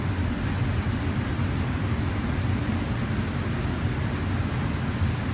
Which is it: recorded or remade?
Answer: recorded